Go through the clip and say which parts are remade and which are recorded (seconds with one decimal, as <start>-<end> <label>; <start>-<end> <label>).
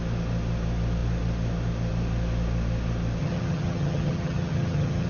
0.0-3.2 recorded; 3.2-5.1 remade